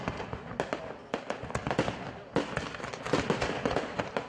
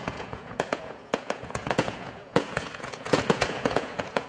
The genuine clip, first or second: first